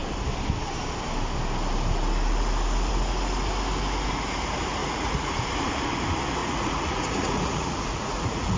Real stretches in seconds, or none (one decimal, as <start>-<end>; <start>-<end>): 0.0-4.8; 5.3-6.4